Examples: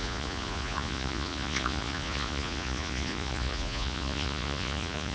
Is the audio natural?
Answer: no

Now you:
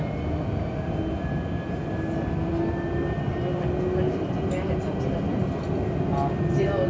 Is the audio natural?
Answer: yes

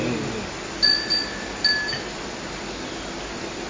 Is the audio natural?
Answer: yes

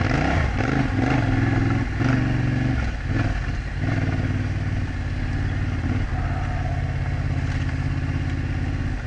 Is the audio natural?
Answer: yes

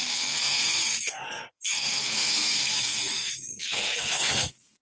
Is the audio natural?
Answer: no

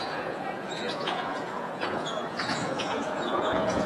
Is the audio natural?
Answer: no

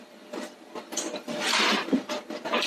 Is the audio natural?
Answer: yes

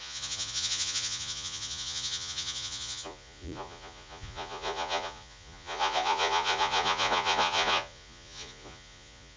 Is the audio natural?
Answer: no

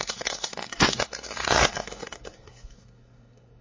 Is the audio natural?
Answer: no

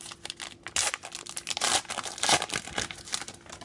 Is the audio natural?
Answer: yes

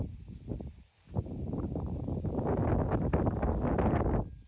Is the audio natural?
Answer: yes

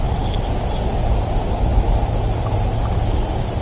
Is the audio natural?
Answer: yes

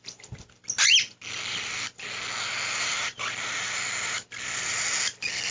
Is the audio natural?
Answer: yes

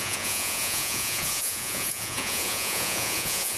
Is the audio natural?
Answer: no